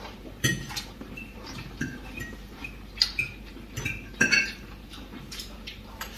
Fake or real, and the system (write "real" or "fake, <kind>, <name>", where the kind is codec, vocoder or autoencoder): fake, vocoder, BigVGAN v2